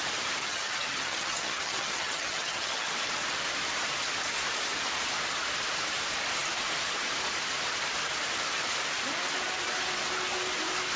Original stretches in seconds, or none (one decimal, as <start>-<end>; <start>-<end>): 0.0-0.4; 2.9-11.0